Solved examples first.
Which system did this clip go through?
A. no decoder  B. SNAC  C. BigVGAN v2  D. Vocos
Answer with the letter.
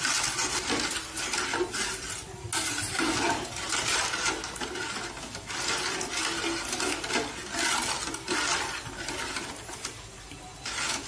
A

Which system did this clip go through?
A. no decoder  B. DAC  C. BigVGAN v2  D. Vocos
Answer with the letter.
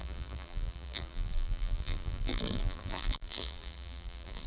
C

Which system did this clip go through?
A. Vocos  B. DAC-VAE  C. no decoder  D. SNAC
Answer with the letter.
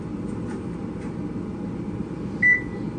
C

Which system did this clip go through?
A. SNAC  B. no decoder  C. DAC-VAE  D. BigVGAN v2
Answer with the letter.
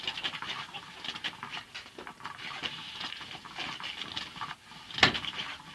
B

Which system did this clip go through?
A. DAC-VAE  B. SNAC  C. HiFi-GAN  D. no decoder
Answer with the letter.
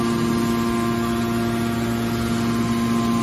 D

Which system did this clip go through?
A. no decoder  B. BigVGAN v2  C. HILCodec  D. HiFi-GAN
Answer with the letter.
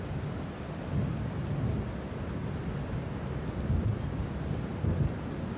A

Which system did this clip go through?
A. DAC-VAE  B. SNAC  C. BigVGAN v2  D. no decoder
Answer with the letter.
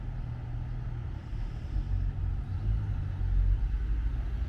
D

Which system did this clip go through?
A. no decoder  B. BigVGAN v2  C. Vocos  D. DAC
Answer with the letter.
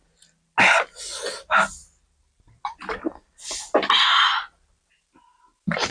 A